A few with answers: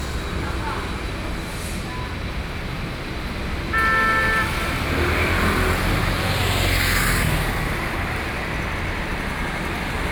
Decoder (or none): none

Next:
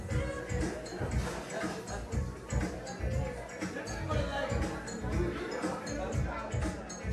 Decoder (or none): none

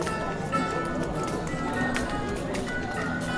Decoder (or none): none